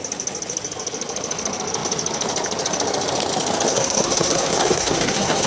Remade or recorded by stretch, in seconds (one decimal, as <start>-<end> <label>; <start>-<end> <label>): 0.0-3.7 recorded; 3.7-5.5 remade